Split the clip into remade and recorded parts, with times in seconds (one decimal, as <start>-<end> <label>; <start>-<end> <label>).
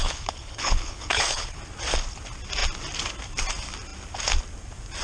0.0-1.6 remade; 1.6-5.0 recorded